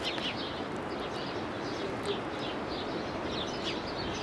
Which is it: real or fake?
real